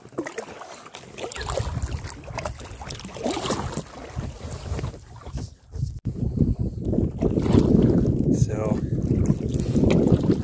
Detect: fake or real real